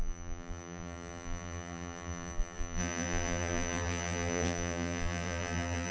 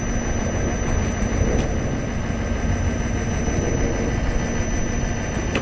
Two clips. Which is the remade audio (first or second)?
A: first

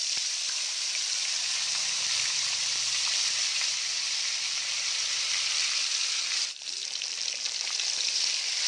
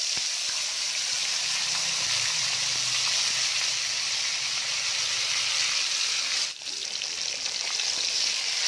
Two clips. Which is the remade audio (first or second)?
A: first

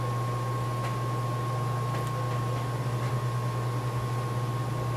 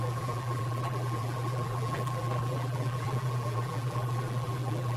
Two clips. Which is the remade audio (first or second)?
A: second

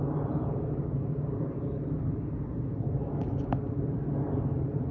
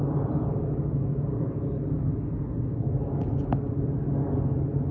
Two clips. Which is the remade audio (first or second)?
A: first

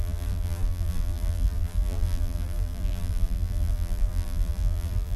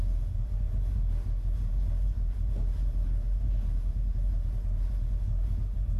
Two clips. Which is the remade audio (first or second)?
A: first